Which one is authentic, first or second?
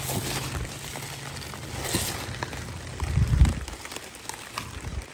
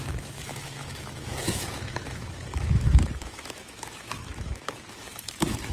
first